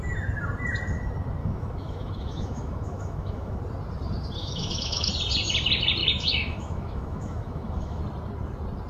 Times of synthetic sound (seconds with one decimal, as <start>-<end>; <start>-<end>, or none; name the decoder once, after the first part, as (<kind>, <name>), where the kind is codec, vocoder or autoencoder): 1.4-3.6 (autoencoder, DAC-VAE); 4.4-5.1; 6.0-8.0